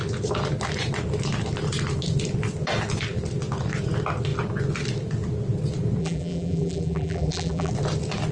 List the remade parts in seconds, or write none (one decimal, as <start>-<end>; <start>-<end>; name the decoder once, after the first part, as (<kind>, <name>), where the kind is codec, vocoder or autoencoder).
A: 6.0-7.7 (vocoder, BigVGAN v2)